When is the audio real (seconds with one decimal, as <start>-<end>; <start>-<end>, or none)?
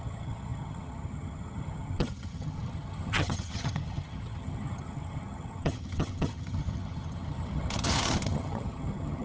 none